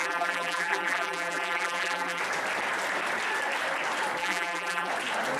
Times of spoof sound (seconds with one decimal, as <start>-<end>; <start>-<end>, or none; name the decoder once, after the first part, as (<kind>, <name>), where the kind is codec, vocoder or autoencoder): 0.0-2.2 (vocoder, BigVGAN v2); 4.2-4.9